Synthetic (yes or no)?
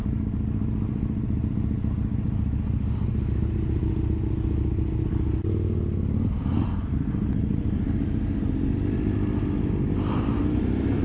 no